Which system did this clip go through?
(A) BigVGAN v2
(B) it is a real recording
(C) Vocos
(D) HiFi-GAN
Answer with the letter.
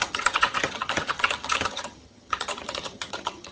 D